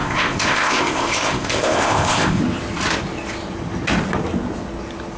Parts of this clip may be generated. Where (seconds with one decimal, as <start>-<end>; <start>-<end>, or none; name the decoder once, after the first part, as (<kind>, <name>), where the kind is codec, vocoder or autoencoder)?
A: 0.0-2.4 (codec, ZipCodec)